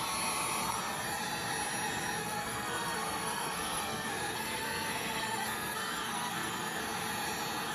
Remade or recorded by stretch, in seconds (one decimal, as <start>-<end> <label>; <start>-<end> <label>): 0.0-2.2 recorded; 2.2-6.8 remade; 6.8-7.7 recorded